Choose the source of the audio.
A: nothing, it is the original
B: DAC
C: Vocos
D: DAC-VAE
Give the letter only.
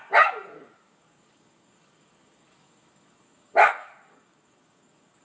B